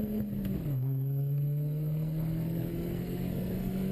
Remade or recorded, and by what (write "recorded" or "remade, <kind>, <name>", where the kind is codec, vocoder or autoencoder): remade, codec, SNAC